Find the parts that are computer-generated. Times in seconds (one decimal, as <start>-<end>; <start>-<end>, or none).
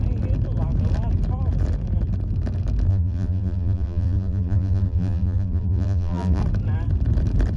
2.9-6.4